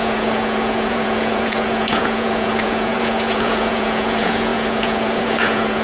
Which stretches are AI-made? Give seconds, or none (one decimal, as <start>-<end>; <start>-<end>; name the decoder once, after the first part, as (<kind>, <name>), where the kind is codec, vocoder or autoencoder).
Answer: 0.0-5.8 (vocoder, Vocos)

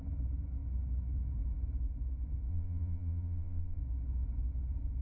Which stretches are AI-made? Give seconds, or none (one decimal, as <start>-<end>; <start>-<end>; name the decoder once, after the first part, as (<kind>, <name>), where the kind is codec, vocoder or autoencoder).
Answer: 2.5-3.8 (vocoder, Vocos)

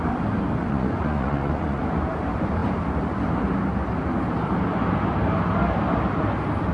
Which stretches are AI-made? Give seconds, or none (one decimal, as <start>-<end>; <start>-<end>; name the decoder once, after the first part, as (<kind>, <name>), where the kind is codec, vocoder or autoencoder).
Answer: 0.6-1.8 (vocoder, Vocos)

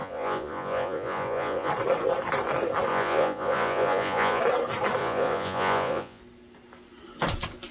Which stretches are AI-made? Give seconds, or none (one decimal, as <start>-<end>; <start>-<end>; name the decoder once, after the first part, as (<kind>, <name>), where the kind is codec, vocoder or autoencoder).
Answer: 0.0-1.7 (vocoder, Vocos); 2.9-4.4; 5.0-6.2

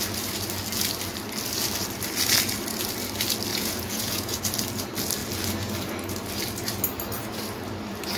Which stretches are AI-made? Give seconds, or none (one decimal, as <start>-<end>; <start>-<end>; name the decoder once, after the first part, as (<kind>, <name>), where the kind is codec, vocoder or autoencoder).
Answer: 3.5-4.4 (vocoder, Vocos)

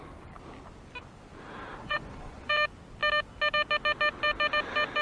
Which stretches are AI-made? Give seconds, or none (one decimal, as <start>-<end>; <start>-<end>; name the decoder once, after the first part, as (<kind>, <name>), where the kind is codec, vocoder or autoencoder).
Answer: 1.8-2.5 (vocoder, Vocos)